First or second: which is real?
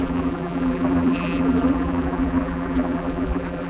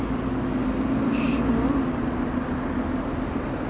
second